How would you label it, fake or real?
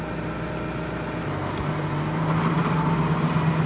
real